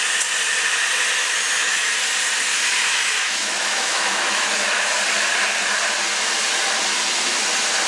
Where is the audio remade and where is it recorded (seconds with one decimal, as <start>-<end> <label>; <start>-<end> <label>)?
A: 0.0-1.2 recorded; 1.2-1.9 remade; 1.9-2.5 recorded; 2.5-5.0 remade; 5.0-7.9 recorded